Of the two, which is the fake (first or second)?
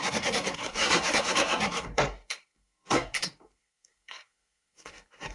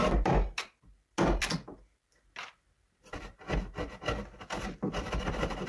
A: first